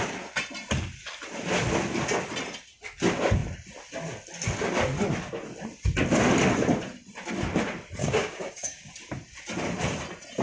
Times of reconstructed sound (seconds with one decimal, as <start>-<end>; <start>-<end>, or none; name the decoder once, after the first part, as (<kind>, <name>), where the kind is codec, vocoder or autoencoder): 8.0-8.9 (codec, DAC)